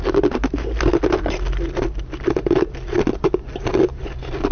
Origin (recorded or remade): recorded